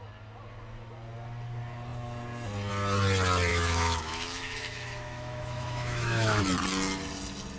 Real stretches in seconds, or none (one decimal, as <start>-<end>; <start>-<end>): 0.0-3.5; 6.4-7.6